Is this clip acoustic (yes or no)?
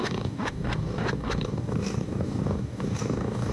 no